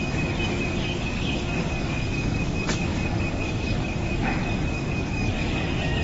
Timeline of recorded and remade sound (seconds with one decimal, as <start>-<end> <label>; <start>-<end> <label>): 0.0-0.7 recorded; 0.7-4.3 remade; 4.3-4.7 recorded; 4.7-6.0 remade